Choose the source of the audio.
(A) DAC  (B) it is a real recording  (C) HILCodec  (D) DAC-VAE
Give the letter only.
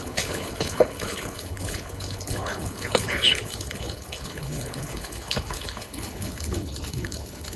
C